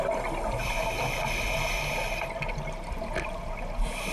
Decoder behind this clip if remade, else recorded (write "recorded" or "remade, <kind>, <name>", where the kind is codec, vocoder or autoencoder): recorded